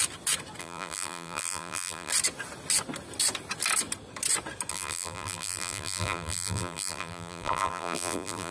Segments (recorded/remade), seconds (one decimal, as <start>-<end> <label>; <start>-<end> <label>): 0.0-0.6 recorded; 0.6-2.1 remade; 2.1-4.7 recorded; 4.7-8.5 remade